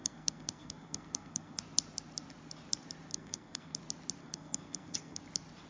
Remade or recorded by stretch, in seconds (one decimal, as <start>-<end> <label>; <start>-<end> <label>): 0.0-1.6 remade; 1.6-3.1 recorded; 3.1-3.8 remade; 3.8-4.2 recorded; 4.2-5.2 remade; 5.2-5.7 recorded